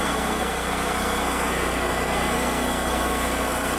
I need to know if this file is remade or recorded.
remade